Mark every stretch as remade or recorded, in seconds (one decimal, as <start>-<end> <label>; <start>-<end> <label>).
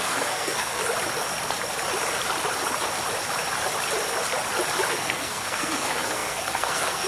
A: 0.0-0.8 remade; 0.8-4.9 recorded; 4.9-7.1 remade